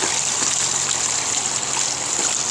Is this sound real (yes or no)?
yes